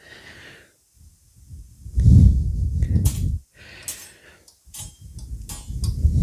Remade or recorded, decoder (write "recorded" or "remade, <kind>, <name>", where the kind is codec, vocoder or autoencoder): recorded